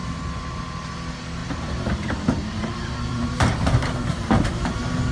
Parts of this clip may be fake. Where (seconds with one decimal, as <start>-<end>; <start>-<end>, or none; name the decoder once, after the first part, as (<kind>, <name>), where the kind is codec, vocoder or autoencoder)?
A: 1.4-4.5 (vocoder, BigVGAN v2)